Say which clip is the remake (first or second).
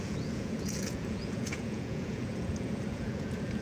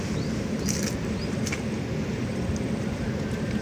first